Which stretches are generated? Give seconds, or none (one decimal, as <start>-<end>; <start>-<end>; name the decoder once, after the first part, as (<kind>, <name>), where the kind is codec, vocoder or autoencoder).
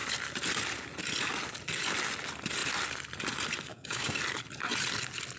3.7-4.2 (codec, DAC)